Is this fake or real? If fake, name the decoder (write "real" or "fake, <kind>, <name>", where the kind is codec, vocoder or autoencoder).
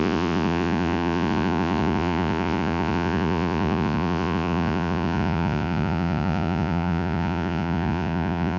fake, vocoder, Vocos